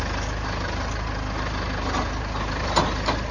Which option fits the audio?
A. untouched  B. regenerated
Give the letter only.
A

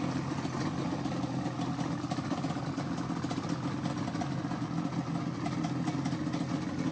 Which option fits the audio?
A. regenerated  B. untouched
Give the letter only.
B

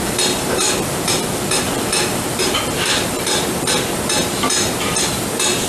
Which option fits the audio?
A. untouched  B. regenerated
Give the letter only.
B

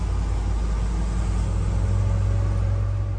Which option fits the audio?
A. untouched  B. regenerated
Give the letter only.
A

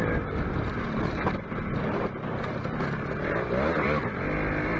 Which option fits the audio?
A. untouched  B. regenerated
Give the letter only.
A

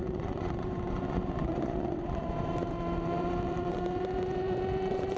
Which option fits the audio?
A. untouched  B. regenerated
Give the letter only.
B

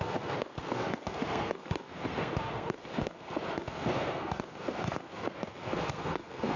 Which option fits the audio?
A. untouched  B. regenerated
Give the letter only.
B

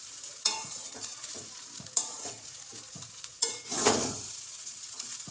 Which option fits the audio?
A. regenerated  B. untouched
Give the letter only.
A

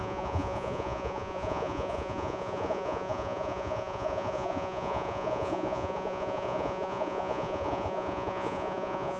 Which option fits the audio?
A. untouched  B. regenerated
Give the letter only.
B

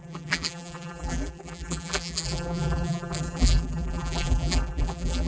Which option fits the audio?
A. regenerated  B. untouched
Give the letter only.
A